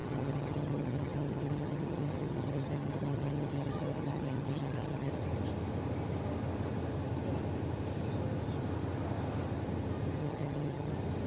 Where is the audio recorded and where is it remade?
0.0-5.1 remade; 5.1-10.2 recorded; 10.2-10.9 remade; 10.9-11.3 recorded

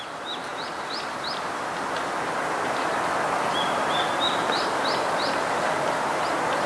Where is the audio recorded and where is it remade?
0.0-6.7 recorded

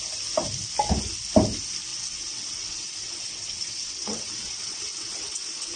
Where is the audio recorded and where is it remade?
0.0-1.9 recorded; 1.9-5.8 remade

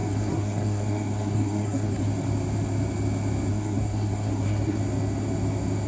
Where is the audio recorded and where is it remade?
0.0-2.0 remade; 2.0-3.5 recorded; 3.5-4.8 remade; 4.8-5.9 recorded

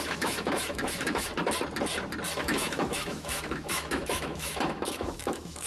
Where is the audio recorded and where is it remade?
0.0-1.3 remade; 1.3-2.4 recorded; 2.4-5.7 remade

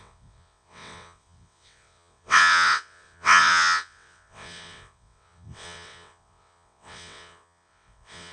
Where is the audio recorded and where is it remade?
0.0-8.3 remade